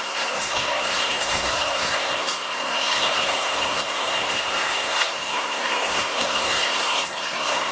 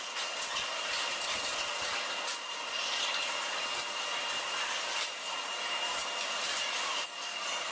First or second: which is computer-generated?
first